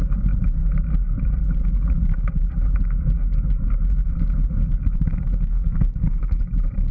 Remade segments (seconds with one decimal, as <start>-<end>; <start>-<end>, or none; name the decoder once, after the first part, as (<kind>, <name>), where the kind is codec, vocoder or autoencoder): 5.1-6.4 (codec, SNAC)